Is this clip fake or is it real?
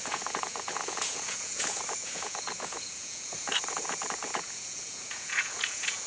fake